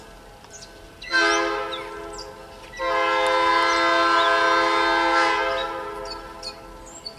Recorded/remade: recorded